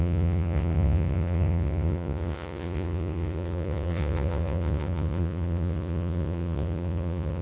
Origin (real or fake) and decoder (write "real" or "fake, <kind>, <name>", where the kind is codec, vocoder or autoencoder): fake, vocoder, Vocos